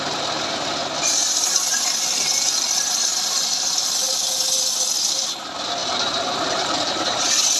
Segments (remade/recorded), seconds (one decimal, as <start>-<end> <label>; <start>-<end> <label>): 0.0-7.6 recorded

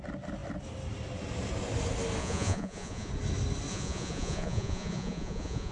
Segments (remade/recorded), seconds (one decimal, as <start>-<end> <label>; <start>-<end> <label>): 0.0-2.2 recorded; 2.2-3.1 remade; 3.1-3.7 recorded; 3.7-5.7 remade

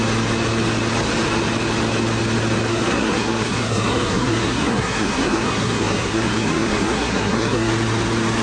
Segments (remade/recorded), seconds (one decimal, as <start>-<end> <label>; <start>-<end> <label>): 0.0-2.7 recorded; 2.7-7.7 remade; 7.7-8.4 recorded

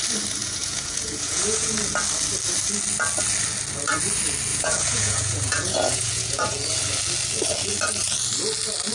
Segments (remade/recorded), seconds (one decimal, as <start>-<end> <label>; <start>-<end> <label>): 0.0-0.4 recorded; 0.4-1.8 remade; 1.8-4.5 recorded; 4.5-6.5 remade; 6.5-8.9 recorded

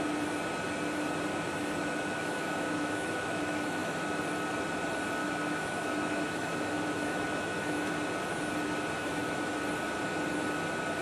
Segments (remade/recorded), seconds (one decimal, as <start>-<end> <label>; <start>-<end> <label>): 0.0-1.3 recorded; 1.3-4.2 remade; 4.2-5.2 recorded; 5.2-7.9 remade; 7.9-9.0 recorded; 9.0-9.6 remade; 9.6-11.0 recorded

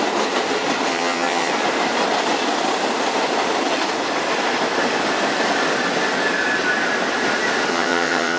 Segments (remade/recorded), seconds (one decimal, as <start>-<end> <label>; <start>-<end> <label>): 0.0-0.9 recorded; 0.9-1.5 remade; 1.5-7.7 recorded; 7.7-8.4 remade